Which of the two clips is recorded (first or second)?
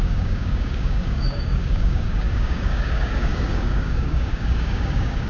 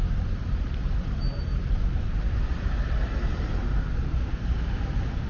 second